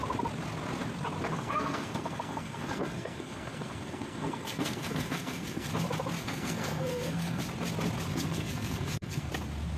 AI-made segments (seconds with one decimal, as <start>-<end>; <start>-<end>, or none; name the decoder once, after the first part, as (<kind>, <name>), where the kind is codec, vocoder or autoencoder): 1.3-5.7 (codec, SNAC); 6.2-7.4; 8.1-9.3